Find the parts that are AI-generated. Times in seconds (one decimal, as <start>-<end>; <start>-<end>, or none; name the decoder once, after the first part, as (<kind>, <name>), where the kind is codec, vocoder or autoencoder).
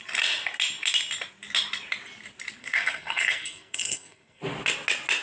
2.6-4.4 (codec, SNAC)